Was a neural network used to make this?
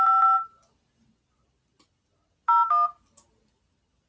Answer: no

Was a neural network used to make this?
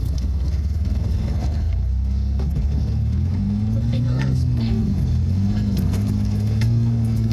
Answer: yes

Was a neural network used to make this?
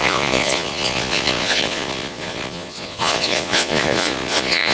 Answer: yes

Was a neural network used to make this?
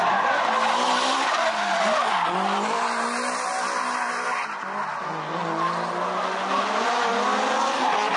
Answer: no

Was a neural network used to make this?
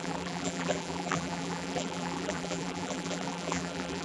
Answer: yes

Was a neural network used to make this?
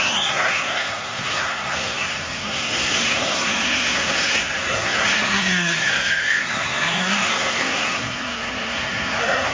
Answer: yes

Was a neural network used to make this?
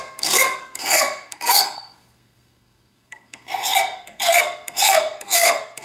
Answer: yes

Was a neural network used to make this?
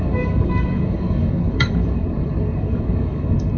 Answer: yes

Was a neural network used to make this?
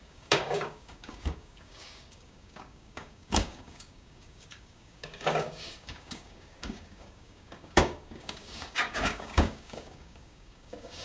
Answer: yes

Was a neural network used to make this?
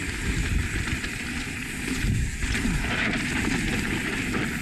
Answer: no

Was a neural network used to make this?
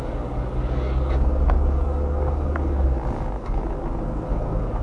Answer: yes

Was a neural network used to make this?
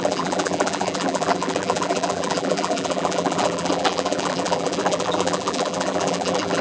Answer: yes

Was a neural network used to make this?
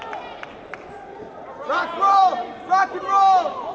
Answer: no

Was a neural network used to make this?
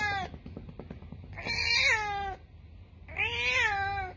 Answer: no